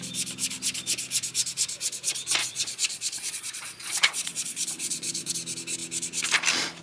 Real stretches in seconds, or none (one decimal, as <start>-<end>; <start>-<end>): 0.0-2.4; 5.3-6.8